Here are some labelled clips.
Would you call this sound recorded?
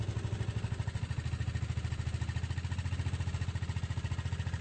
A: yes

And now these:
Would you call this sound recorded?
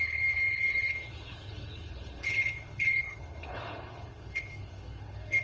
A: no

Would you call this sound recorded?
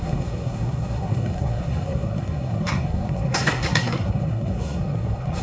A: no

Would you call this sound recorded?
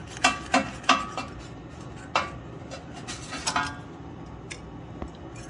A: yes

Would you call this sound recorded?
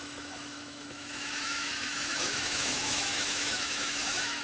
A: no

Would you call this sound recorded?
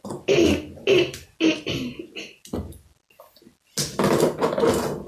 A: yes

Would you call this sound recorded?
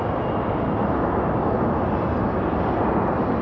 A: yes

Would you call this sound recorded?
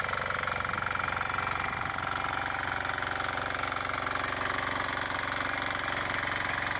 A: yes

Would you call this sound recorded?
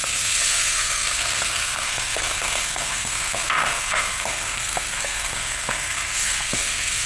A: no